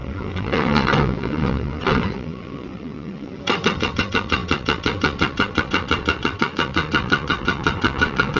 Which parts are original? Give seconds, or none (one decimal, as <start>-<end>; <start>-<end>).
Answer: none